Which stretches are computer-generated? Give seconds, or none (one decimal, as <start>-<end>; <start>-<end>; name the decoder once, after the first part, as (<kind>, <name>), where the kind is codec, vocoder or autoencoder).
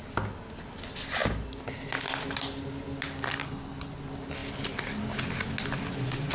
3.4-4.0 (codec, HILCodec)